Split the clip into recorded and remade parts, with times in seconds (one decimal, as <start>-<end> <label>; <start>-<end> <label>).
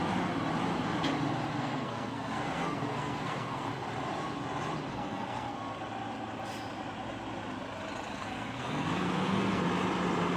0.0-1.6 recorded; 1.6-3.7 remade; 3.7-4.9 recorded; 4.9-5.8 remade; 5.8-8.1 recorded; 8.1-9.6 remade; 9.6-10.4 recorded